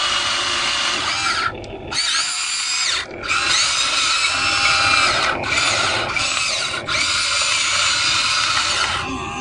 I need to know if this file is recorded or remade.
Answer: recorded